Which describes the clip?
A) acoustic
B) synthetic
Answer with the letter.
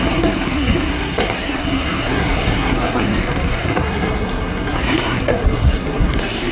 B